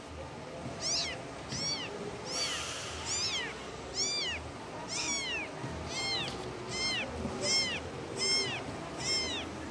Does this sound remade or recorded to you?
recorded